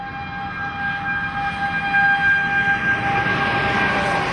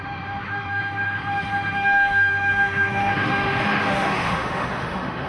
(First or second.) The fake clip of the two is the second